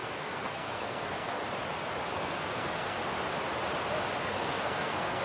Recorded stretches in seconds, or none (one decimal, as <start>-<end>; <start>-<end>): 1.4-2.1; 3.0-4.2